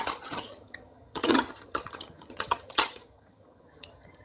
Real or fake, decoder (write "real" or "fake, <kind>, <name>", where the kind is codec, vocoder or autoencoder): fake, vocoder, HiFi-GAN